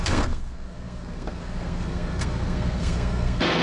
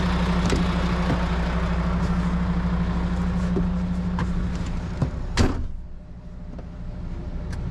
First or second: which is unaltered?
second